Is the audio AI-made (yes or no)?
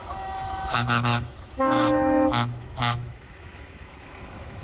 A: yes